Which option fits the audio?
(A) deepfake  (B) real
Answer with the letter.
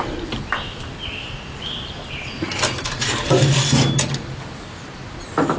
B